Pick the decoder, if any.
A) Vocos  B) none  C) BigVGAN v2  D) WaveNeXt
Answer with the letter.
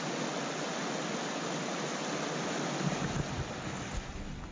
B